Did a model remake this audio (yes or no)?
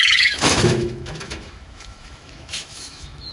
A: yes